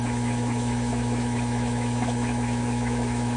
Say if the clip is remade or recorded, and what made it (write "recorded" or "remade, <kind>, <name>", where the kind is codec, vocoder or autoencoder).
remade, autoencoder, DAC-VAE